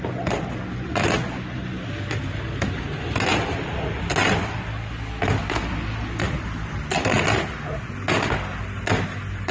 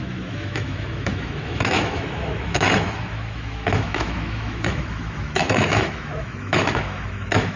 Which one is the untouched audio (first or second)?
first